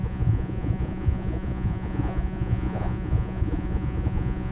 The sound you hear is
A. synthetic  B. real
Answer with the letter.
A